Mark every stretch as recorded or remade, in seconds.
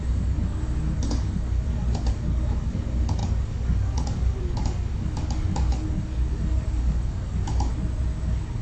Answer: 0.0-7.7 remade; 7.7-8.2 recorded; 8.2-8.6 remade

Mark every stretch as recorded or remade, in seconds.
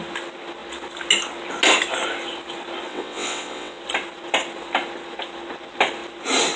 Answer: 0.0-2.9 recorded; 2.9-3.8 remade; 3.8-6.6 recorded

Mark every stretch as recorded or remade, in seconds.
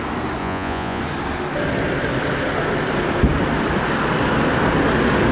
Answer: 0.0-0.4 recorded; 0.4-1.0 remade; 1.0-5.3 recorded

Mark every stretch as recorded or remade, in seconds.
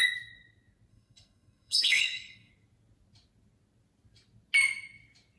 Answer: 0.0-0.9 recorded; 0.9-2.5 remade; 2.5-5.4 recorded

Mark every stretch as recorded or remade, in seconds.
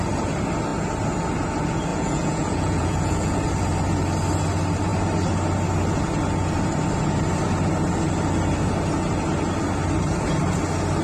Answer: 0.0-1.9 recorded; 1.9-3.5 remade; 3.5-11.0 recorded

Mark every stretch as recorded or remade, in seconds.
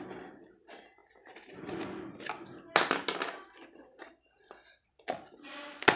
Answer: 0.0-6.0 recorded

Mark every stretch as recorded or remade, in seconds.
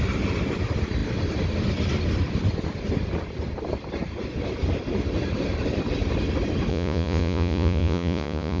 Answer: 0.0-6.7 recorded; 6.7-8.6 remade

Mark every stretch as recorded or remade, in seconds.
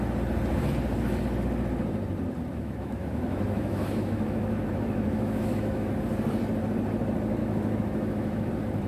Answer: 0.0-2.5 recorded; 2.5-5.9 remade; 5.9-7.4 recorded; 7.4-8.5 remade; 8.5-8.9 recorded